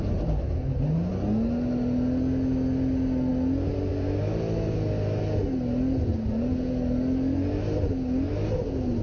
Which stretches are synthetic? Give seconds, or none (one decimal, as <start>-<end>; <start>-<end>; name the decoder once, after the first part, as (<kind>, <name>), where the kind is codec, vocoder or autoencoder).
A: none